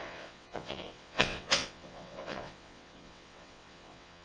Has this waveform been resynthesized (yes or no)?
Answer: yes